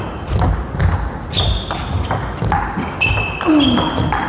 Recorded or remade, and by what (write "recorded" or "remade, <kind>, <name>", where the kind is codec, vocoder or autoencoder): recorded